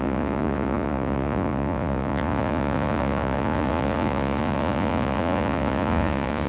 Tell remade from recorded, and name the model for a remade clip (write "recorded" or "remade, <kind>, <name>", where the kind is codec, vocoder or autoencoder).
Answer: remade, vocoder, Vocos